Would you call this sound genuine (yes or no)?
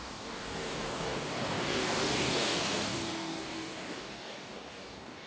no